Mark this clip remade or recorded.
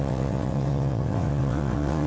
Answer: remade